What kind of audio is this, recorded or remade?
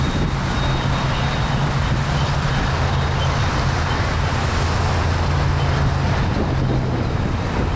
recorded